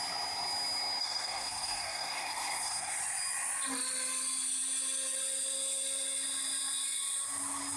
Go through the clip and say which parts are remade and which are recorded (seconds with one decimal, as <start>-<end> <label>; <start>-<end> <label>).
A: 0.0-1.0 recorded; 1.0-3.0 remade; 3.0-7.8 recorded

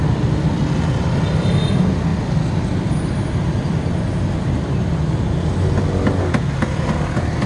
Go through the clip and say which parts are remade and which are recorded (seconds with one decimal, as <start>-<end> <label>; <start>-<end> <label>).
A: 0.0-7.5 recorded

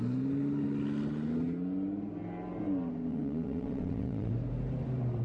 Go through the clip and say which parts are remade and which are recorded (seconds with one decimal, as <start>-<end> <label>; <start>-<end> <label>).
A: 0.0-3.1 recorded; 3.1-4.3 remade; 4.3-5.2 recorded